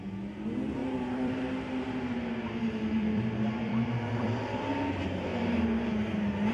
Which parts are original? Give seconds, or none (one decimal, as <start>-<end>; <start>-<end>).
0.0-0.8; 4.7-6.5